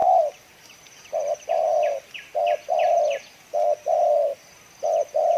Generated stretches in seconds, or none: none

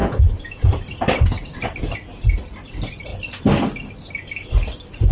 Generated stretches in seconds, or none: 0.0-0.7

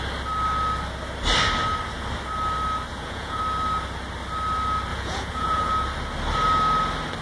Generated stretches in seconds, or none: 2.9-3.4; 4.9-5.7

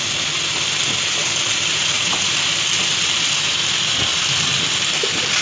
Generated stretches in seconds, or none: 1.7-2.3

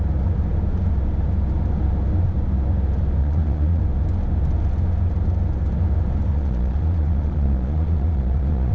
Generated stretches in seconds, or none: 3.2-3.8; 6.3-8.7

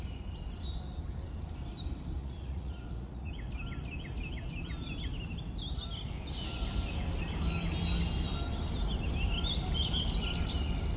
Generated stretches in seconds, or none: 2.2-3.3